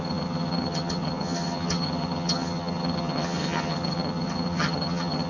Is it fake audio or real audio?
fake